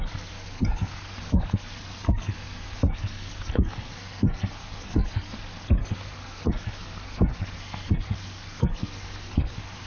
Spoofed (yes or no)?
yes